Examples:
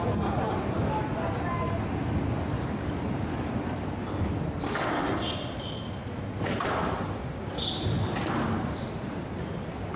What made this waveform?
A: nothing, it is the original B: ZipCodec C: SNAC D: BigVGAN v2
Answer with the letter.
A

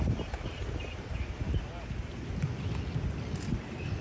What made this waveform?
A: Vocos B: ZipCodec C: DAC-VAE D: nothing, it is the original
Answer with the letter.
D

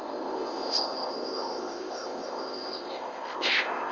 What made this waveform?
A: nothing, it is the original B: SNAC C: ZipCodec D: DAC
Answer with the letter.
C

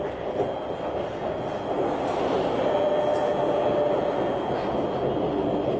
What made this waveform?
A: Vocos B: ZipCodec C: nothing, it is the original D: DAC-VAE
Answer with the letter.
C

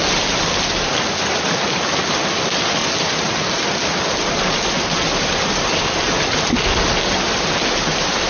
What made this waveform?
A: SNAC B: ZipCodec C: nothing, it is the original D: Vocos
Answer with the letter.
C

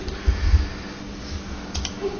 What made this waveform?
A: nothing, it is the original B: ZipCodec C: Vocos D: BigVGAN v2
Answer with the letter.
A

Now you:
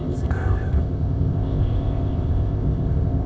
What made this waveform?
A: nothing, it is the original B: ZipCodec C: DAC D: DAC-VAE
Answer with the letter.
B